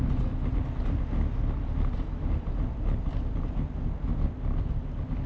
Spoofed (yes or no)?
no